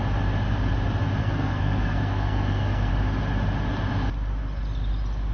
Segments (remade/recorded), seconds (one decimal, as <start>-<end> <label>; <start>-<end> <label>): 0.0-1.2 recorded; 1.2-2.9 remade; 2.9-5.3 recorded